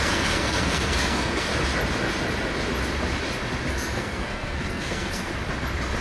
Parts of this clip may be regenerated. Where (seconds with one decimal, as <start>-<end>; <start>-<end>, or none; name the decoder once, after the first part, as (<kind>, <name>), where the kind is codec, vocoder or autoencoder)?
0.0-1.5 (codec, SNAC); 3.7-5.3